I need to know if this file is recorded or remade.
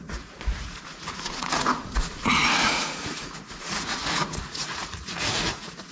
remade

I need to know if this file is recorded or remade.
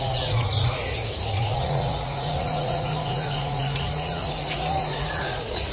remade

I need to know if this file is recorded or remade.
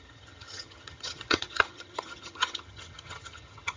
remade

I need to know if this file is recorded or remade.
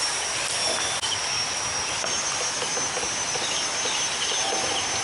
recorded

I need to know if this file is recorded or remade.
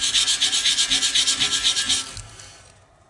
recorded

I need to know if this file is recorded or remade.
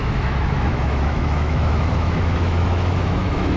remade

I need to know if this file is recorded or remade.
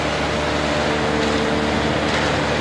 recorded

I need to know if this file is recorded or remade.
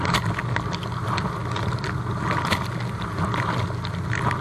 recorded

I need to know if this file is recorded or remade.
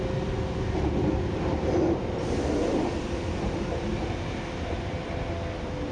recorded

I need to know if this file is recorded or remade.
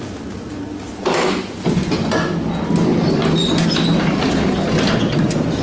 recorded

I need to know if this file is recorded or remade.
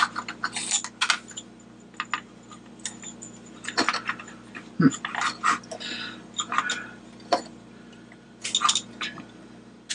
recorded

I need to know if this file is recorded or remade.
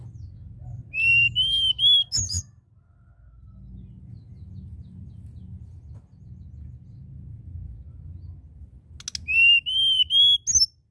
recorded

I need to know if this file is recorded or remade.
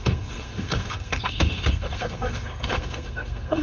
remade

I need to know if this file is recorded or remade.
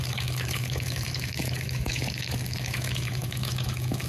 remade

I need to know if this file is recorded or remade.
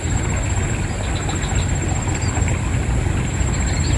recorded